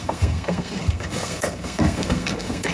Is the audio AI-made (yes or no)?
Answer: yes